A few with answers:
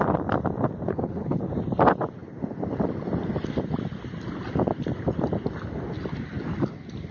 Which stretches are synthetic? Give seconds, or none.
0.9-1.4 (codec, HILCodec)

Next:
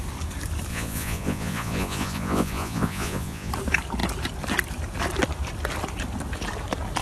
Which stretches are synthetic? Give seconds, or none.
0.7-3.5 (vocoder, Vocos)